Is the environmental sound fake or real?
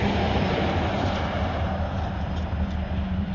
fake